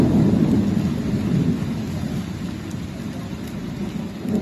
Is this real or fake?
real